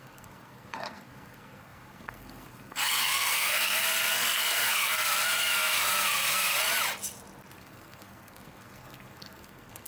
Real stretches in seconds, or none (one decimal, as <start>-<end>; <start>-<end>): 6.5-7.6